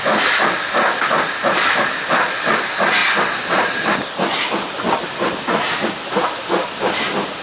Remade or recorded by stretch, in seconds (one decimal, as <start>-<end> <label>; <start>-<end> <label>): 0.0-7.4 recorded

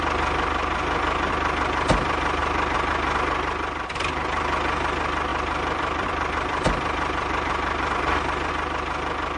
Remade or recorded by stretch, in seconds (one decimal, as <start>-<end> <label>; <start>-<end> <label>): 0.0-2.4 recorded; 2.4-2.9 remade; 2.9-5.3 recorded; 5.3-8.5 remade; 8.5-9.4 recorded

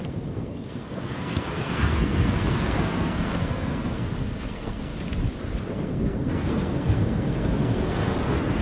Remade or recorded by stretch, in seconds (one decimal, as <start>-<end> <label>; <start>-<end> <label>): 0.0-4.9 remade; 4.9-5.7 recorded; 5.7-8.6 remade

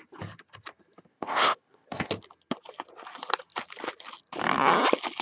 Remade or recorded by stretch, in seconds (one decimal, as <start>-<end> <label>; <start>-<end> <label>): 0.0-1.1 recorded; 1.1-2.1 remade; 2.1-5.2 recorded

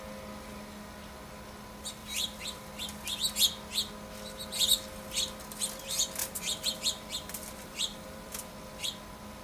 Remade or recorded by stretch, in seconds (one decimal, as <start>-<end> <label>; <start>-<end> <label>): 0.0-2.0 recorded; 2.0-2.7 remade; 2.7-6.2 recorded; 6.2-8.4 remade; 8.4-9.4 recorded

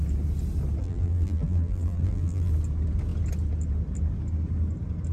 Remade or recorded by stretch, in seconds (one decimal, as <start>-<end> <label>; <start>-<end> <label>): 0.0-0.8 recorded; 0.8-2.5 remade; 2.5-5.1 recorded

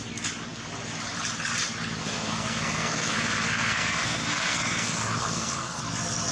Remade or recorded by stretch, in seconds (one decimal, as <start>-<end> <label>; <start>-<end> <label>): 0.0-2.0 recorded; 2.0-5.8 remade; 5.8-6.3 recorded